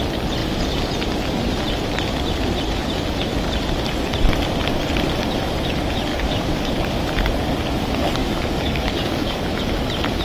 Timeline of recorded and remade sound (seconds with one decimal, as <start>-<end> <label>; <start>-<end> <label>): 0.0-6.1 recorded; 6.1-6.7 remade; 6.7-8.2 recorded; 8.2-9.6 remade; 9.6-10.2 recorded